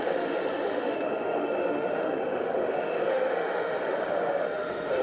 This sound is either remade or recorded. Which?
remade